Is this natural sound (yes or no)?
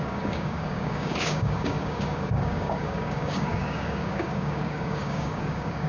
no